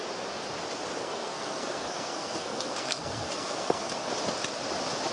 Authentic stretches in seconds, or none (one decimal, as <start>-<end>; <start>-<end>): 0.0-1.0; 4.1-5.1